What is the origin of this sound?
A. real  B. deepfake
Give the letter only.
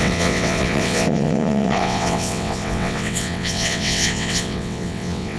B